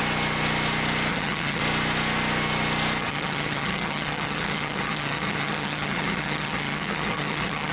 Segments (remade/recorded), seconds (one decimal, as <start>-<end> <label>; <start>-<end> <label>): 0.0-1.1 recorded; 1.1-1.6 remade; 1.6-3.0 recorded; 3.0-7.7 remade